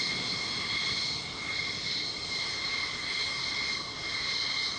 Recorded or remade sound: recorded